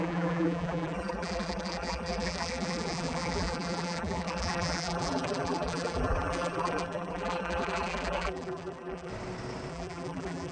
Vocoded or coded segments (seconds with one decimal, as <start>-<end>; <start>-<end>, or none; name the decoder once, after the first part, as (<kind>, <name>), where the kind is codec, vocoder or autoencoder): 0.0-9.1 (vocoder, BigVGAN v2); 9.7-10.5